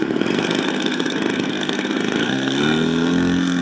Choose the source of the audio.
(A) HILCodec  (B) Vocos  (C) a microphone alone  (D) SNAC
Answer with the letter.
D